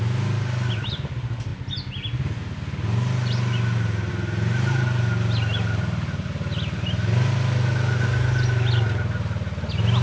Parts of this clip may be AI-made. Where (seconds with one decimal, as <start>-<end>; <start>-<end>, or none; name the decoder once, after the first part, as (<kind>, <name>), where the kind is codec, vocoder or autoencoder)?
none